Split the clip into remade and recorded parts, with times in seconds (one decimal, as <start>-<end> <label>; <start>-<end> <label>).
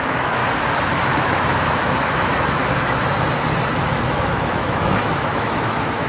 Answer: 0.0-0.4 remade; 0.4-1.0 recorded; 1.0-2.6 remade; 2.6-3.8 recorded; 3.8-6.1 remade